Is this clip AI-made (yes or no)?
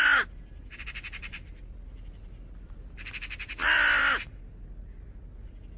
no